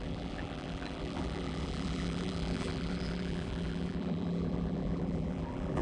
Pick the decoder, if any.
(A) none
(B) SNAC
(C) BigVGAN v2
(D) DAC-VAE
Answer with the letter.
C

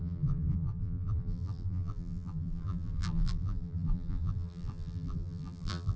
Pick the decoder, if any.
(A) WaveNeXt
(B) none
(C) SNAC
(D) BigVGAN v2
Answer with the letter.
D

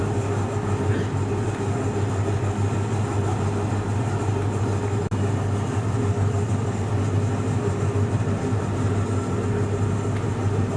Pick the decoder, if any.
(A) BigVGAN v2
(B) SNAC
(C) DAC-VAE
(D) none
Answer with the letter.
D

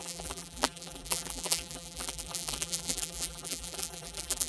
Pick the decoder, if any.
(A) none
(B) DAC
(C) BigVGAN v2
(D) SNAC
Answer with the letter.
C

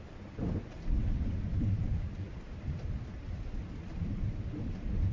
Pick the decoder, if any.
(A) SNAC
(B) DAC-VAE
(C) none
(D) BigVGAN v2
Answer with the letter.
C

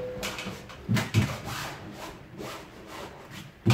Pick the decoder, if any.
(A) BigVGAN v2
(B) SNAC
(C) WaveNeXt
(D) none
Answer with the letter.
A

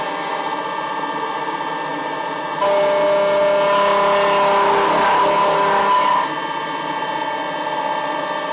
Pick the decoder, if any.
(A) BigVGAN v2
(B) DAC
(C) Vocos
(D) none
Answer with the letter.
D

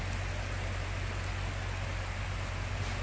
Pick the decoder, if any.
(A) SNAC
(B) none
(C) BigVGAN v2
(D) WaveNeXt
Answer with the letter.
B